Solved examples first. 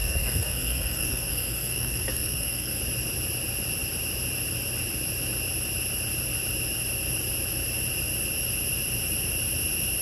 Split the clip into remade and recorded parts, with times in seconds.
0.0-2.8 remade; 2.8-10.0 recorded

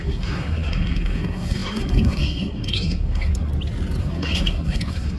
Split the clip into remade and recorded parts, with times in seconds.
0.0-3.5 remade; 3.5-4.0 recorded; 4.0-5.2 remade

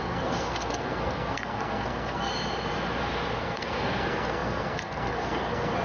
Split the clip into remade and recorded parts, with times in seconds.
0.0-2.3 remade; 2.3-3.4 recorded; 3.4-5.8 remade

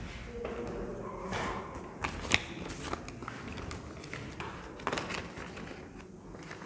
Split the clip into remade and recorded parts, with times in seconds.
0.0-6.7 recorded

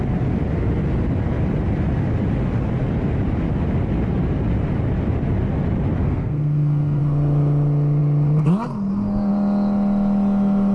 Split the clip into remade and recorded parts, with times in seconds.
0.0-6.0 recorded; 6.0-7.0 remade; 7.0-10.7 recorded

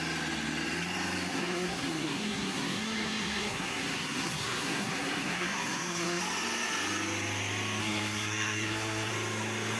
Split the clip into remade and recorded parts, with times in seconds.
0.0-1.3 recorded; 1.3-6.2 remade; 6.2-7.8 recorded; 7.8-9.1 remade; 9.1-9.8 recorded

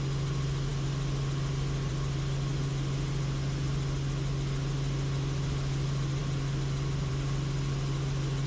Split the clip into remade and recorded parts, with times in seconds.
0.0-8.5 recorded

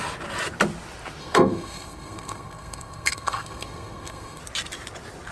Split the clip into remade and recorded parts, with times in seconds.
0.0-1.2 recorded; 1.2-4.4 remade; 4.4-5.3 recorded